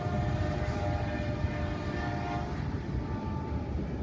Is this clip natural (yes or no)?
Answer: yes